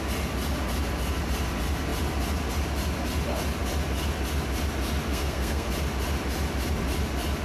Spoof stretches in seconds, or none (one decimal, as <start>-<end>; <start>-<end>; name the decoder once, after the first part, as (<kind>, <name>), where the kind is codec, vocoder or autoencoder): 5.1-5.7 (codec, SNAC)